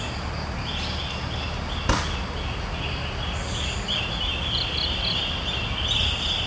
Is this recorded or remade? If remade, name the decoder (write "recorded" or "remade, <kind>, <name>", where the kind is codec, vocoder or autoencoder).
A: recorded